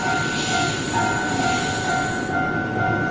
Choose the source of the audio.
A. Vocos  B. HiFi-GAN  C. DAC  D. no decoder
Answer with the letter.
D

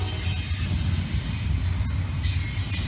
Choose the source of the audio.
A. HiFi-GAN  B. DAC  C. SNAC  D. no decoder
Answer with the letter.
D